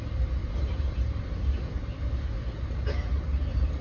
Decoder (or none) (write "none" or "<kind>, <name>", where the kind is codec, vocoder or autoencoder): none